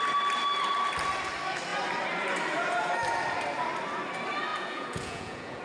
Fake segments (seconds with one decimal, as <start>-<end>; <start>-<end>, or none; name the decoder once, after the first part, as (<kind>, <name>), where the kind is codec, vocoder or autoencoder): 4.5-5.6 (vocoder, Vocos)